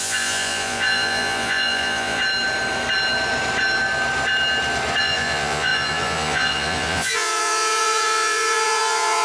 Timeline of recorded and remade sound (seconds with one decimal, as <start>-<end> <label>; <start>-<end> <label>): 0.0-2.2 remade; 2.2-5.0 recorded; 5.0-9.2 remade